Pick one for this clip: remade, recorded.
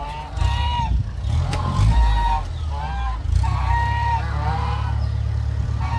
recorded